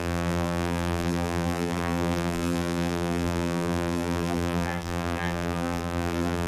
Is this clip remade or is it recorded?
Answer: remade